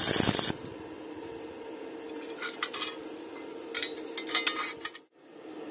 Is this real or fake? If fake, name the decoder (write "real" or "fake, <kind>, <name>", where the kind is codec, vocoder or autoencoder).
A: real